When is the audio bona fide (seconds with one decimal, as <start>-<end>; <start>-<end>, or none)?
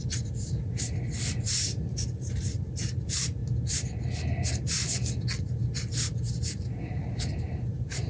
3.4-5.4